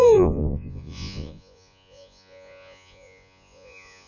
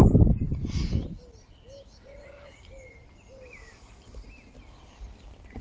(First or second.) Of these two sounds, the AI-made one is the first